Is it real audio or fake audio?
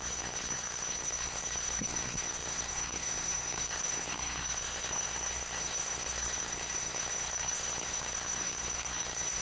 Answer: fake